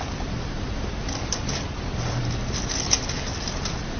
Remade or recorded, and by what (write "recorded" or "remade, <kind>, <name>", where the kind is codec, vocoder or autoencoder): recorded